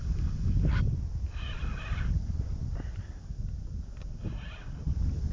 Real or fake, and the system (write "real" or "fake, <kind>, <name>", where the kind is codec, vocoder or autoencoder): real